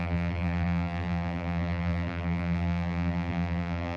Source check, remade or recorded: remade